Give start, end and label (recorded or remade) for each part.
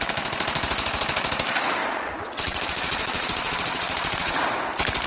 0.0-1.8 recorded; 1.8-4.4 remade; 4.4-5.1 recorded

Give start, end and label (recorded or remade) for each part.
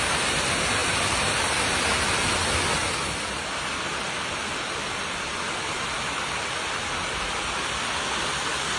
0.0-4.8 recorded; 4.8-7.7 remade; 7.7-8.8 recorded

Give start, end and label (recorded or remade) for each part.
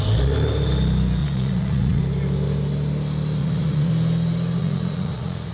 0.0-1.2 recorded; 1.2-2.0 remade; 2.0-3.4 recorded; 3.4-3.9 remade; 3.9-4.6 recorded; 4.6-5.5 remade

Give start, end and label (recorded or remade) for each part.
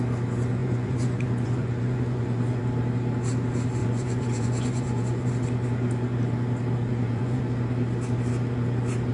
0.0-0.6 recorded; 0.6-2.6 remade; 2.6-3.8 recorded; 3.8-5.3 remade; 5.3-6.9 recorded; 6.9-7.4 remade; 7.4-9.1 recorded